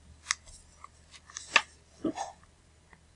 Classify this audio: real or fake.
real